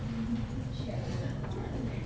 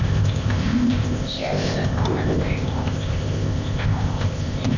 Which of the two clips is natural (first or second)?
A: first